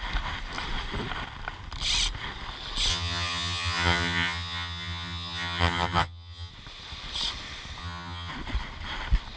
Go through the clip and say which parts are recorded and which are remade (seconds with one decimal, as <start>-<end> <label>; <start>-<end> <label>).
0.0-2.9 recorded; 2.9-6.5 remade; 6.5-7.8 recorded; 7.8-8.3 remade; 8.3-9.4 recorded